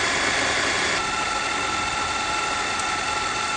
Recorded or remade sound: recorded